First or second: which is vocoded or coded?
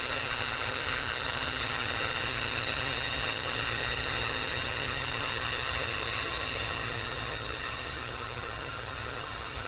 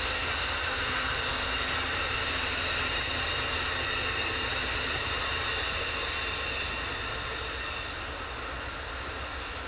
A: first